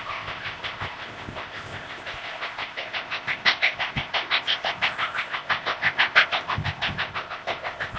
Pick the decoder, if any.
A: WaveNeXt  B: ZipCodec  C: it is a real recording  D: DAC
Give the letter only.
B